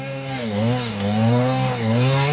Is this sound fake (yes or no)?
yes